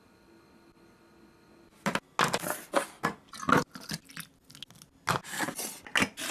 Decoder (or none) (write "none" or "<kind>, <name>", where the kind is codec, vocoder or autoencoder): none